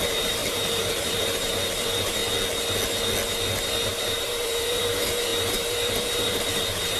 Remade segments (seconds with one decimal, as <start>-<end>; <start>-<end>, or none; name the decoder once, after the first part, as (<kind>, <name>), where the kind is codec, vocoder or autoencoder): 0.0-2.2 (vocoder, BigVGAN v2); 4.0-7.0